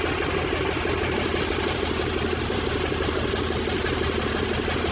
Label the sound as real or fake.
real